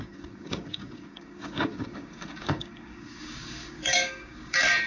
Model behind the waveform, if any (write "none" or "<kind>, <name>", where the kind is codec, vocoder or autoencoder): codec, DAC